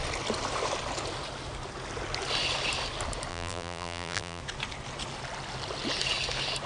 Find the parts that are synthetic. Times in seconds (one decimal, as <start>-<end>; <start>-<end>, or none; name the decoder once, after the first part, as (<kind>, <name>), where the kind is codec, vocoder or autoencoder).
3.3-4.4 (vocoder, BigVGAN v2)